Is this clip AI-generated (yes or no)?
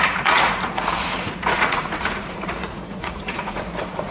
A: yes